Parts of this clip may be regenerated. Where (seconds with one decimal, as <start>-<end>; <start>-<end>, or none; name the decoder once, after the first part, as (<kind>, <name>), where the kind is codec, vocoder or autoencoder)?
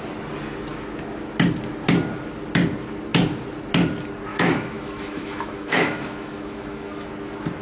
4.3-7.1 (autoencoder, DAC-VAE)